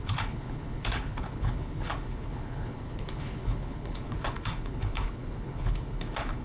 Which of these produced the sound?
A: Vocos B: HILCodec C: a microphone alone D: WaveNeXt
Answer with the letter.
B